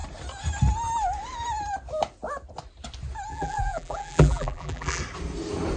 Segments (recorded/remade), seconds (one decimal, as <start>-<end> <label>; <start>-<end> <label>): 0.0-3.3 recorded; 3.3-5.0 remade; 5.0-5.8 recorded